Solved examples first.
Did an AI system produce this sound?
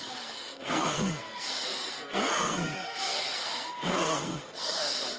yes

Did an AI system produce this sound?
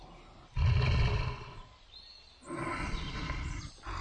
no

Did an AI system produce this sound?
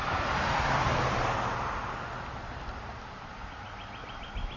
no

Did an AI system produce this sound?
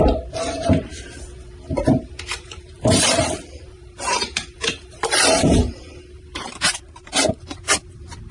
yes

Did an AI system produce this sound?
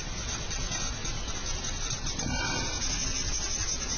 no